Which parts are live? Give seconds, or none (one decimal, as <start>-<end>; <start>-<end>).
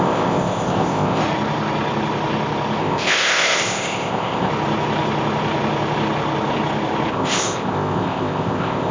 1.2-2.8; 4.5-7.1